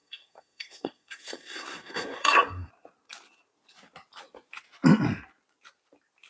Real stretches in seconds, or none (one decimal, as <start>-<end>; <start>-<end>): 2.7-6.3

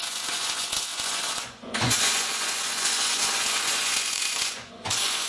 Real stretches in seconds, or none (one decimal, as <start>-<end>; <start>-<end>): none

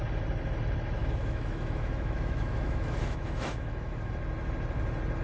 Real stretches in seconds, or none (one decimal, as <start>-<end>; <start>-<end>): 0.0-1.0; 4.1-5.2

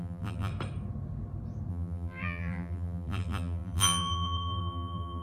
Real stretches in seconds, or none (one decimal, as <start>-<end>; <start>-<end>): 0.5-1.7

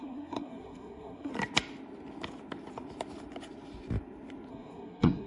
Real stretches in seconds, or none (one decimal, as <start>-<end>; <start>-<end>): 1.3-4.5

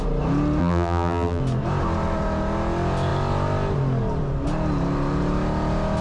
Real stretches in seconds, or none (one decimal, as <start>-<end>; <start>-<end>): 0.0-0.6; 1.4-6.0

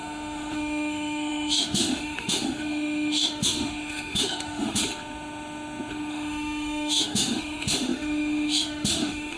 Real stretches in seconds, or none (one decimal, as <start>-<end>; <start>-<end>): 4.8-6.1